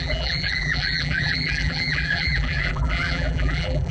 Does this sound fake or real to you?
fake